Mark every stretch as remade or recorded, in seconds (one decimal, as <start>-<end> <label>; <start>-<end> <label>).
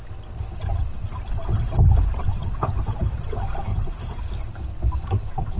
0.0-3.7 recorded; 3.7-4.2 remade; 4.2-5.6 recorded